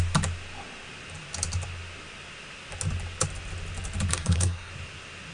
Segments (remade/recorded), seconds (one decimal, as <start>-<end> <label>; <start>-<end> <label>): 0.0-4.1 recorded; 4.1-4.7 remade; 4.7-5.3 recorded